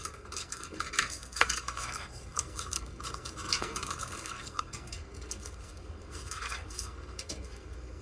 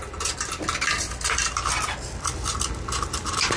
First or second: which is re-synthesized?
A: first